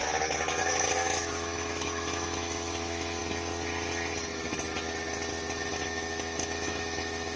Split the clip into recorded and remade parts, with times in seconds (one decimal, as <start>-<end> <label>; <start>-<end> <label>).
0.0-0.6 recorded; 0.6-3.2 remade; 3.2-5.7 recorded; 5.7-7.4 remade